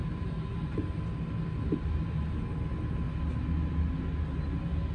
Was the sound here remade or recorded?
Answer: recorded